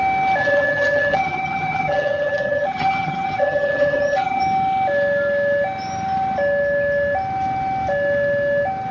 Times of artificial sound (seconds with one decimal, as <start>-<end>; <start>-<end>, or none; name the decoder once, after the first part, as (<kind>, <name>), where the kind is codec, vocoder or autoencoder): 0.4-4.4 (vocoder, HiFi-GAN)